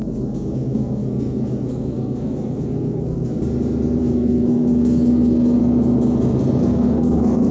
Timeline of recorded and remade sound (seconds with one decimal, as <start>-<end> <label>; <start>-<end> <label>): 0.0-3.4 remade; 3.4-4.0 recorded; 4.0-5.6 remade; 5.6-6.6 recorded; 6.6-7.5 remade